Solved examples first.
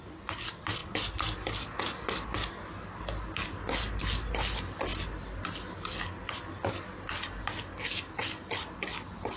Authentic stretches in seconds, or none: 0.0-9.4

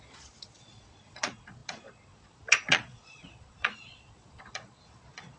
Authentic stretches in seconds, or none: none